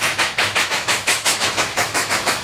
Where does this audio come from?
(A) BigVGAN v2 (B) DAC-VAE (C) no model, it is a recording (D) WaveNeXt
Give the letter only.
B